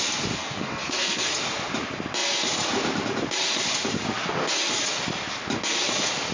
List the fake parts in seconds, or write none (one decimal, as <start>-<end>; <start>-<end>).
0.4-1.3